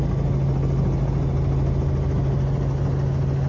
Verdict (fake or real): real